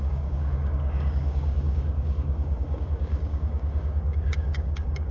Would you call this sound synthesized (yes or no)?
yes